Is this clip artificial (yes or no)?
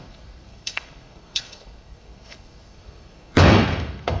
yes